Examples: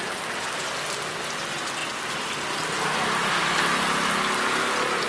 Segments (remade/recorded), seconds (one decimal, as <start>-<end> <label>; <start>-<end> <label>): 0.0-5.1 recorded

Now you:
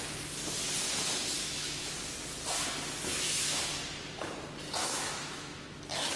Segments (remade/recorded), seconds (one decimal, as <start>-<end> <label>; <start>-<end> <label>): 0.0-1.4 recorded; 1.4-1.9 remade; 1.9-3.1 recorded; 3.1-3.6 remade; 3.6-4.8 recorded; 4.8-5.8 remade; 5.8-6.2 recorded

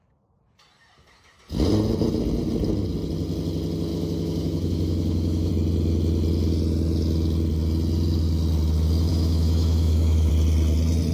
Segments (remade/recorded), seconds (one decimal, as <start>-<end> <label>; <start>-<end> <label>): 0.0-3.9 recorded; 3.9-5.5 remade; 5.5-9.1 recorded; 9.1-10.3 remade; 10.3-11.1 recorded